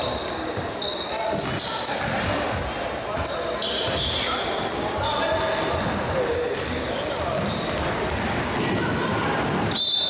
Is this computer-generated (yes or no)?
no